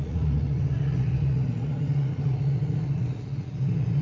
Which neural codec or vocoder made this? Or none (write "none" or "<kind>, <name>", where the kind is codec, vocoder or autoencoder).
vocoder, Vocos